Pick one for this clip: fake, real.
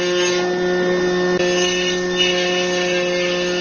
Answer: real